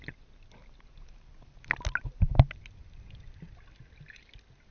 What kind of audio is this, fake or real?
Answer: real